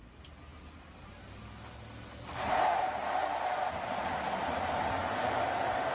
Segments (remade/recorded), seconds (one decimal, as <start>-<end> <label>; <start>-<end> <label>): 0.0-5.9 recorded